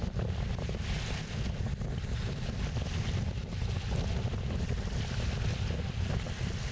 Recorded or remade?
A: recorded